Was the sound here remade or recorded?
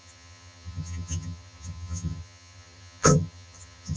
remade